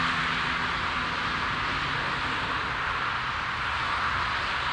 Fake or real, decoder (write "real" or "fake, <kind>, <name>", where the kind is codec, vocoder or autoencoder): real